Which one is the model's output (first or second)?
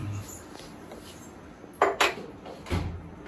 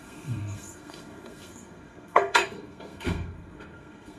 second